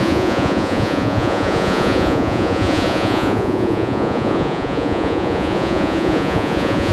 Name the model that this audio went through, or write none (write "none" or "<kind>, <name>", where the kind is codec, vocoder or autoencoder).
vocoder, Vocos